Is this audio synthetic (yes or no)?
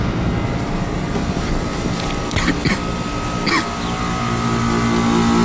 no